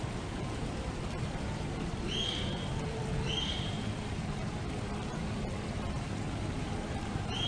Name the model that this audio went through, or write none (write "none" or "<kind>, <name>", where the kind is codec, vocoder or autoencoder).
vocoder, BigVGAN v2